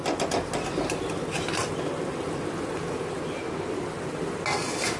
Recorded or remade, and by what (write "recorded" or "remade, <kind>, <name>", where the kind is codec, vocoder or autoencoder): recorded